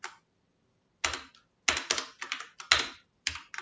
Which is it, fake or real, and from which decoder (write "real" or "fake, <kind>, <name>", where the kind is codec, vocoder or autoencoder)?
real